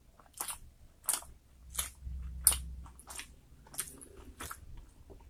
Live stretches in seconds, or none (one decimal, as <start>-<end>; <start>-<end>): 0.0-5.3